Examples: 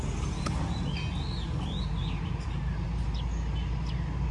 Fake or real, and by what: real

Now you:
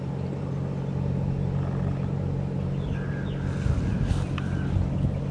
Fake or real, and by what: real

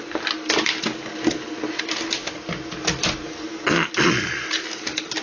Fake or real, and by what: real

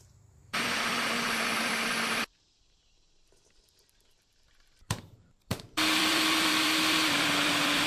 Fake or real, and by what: fake, vocoder, BigVGAN v2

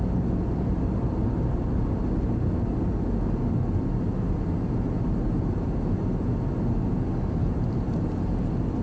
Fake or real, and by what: real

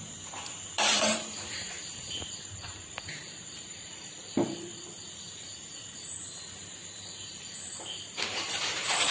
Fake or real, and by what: fake, vocoder, BigVGAN v2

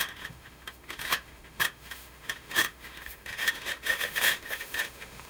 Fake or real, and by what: fake, autoencoder, DAC-VAE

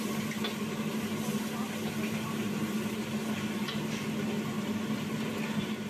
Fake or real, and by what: real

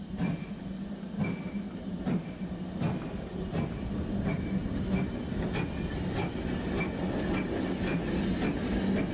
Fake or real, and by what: real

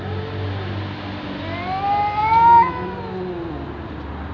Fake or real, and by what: real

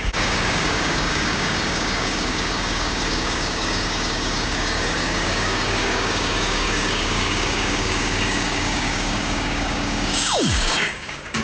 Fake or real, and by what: fake, codec, DAC